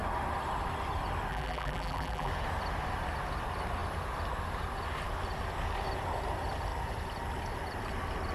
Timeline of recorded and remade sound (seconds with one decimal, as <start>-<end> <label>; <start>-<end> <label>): 0.0-1.3 recorded; 1.3-2.3 remade; 2.3-8.3 recorded